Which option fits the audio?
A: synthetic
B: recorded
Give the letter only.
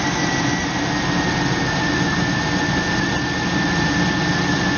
B